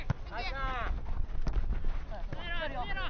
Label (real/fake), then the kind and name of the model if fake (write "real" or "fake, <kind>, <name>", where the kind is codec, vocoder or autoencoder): real